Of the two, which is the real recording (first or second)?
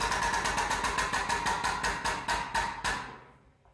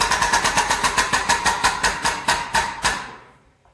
first